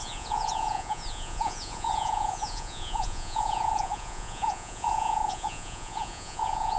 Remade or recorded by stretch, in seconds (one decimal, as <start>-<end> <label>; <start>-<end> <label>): 0.0-6.8 remade